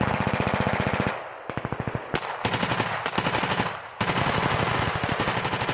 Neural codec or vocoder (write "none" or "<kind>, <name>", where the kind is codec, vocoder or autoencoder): none